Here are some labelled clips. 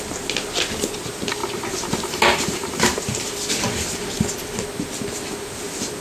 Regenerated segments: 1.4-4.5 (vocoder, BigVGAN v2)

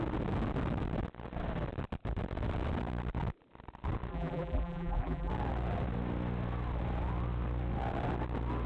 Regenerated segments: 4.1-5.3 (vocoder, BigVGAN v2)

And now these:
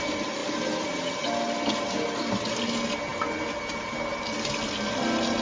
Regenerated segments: none